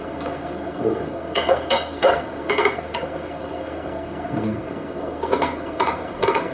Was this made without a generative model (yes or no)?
no